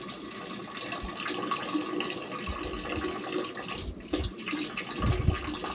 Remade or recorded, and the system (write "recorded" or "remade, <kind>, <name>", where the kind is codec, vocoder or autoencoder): recorded